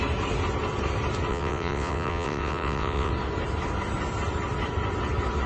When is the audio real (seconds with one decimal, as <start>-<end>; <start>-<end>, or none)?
0.0-1.3; 3.1-5.5